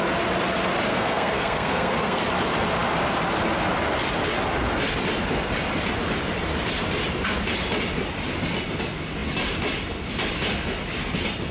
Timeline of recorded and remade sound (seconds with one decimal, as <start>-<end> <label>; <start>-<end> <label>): 0.0-0.9 recorded; 0.9-2.2 remade; 2.2-11.5 recorded